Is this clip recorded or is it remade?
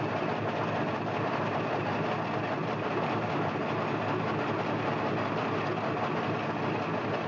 recorded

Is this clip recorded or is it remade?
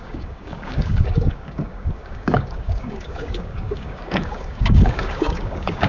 remade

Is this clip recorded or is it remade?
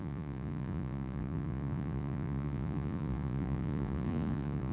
remade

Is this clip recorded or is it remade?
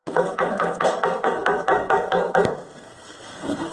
remade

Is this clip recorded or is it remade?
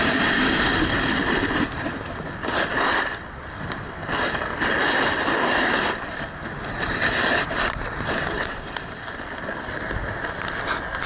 recorded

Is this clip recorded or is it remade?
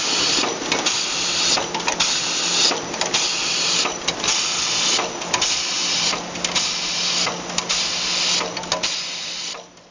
recorded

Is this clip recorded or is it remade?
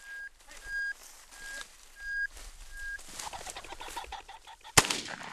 recorded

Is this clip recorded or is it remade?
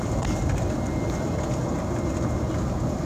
recorded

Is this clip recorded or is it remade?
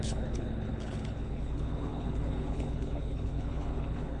remade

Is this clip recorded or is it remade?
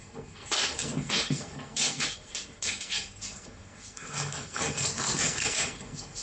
remade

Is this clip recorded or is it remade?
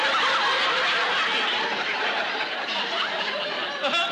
recorded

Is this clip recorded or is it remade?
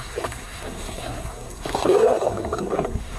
remade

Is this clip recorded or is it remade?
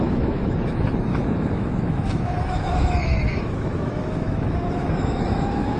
remade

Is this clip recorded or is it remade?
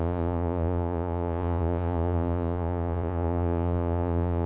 remade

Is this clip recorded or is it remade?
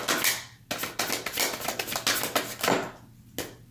recorded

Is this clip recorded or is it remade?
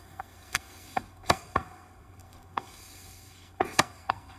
remade